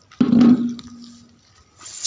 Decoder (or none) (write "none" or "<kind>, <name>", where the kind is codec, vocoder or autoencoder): none